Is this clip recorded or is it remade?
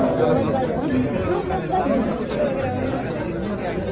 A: recorded